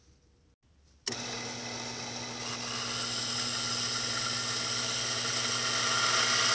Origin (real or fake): real